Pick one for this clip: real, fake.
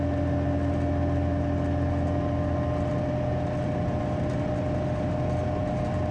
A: real